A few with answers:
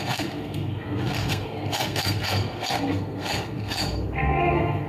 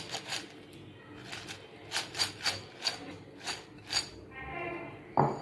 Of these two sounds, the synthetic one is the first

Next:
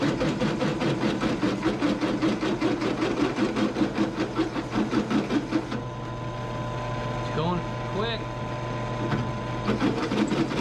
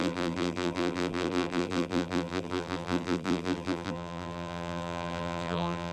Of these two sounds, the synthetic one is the second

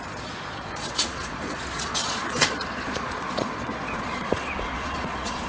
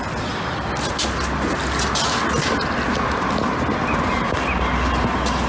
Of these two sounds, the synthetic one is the first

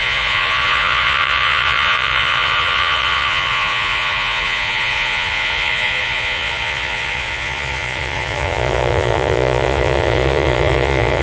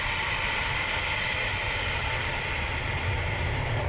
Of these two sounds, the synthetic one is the first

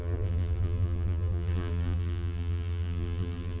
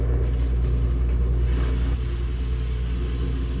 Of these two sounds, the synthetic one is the first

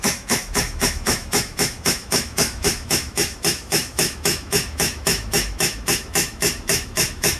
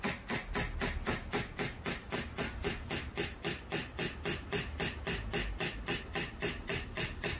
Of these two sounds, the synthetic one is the first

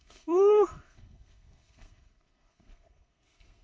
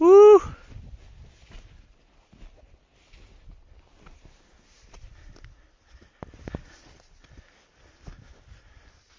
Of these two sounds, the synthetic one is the first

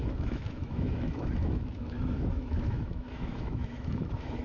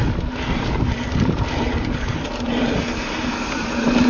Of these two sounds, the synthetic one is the first